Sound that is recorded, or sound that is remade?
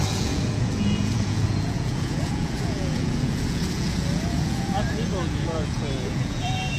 remade